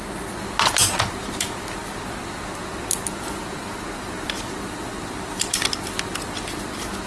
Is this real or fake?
real